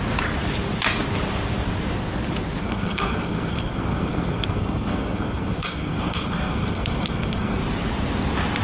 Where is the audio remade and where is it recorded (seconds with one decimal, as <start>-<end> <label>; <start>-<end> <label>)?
0.0-2.6 recorded; 2.6-7.6 remade; 7.6-8.6 recorded